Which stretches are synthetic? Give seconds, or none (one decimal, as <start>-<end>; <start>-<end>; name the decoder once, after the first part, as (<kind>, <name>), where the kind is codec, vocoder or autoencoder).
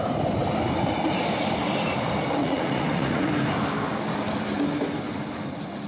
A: 2.4-3.3 (vocoder, Vocos)